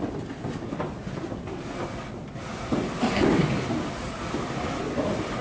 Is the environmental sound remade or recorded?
recorded